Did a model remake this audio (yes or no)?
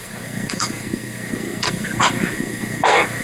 yes